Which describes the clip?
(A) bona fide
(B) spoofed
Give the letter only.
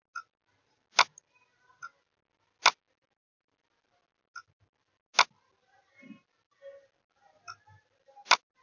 A